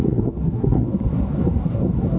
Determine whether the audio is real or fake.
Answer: fake